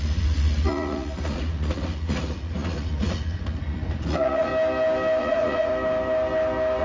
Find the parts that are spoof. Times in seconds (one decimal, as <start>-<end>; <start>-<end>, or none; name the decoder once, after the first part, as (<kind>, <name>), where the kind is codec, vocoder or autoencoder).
0.0-4.5 (vocoder, Vocos); 5.2-5.7